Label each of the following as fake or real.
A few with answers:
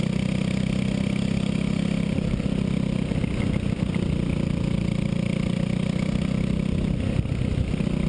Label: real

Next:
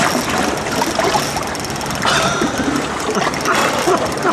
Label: real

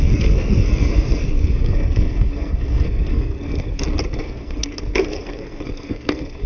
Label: fake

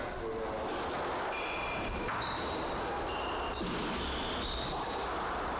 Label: real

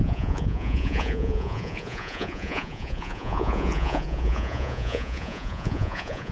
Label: fake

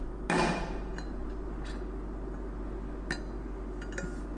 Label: real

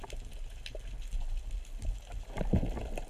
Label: real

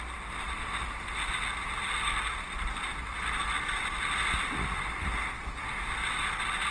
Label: real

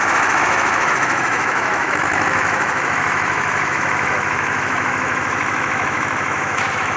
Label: fake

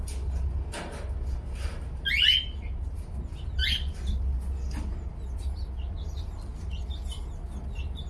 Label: real